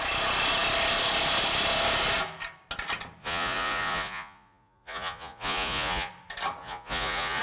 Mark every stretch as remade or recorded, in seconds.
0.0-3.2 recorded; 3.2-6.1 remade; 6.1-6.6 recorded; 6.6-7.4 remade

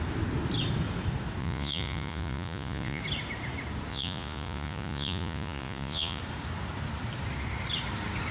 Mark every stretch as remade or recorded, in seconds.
0.0-1.4 recorded; 1.4-3.0 remade; 3.0-3.9 recorded; 3.9-6.2 remade; 6.2-8.3 recorded

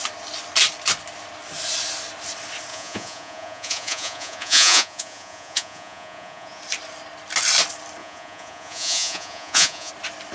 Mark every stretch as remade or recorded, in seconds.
0.0-2.7 recorded; 2.7-6.6 remade; 6.6-8.0 recorded; 8.0-9.9 remade; 9.9-10.3 recorded

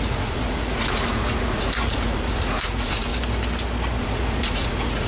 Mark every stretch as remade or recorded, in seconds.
0.0-3.1 remade; 3.1-4.0 recorded; 4.0-5.1 remade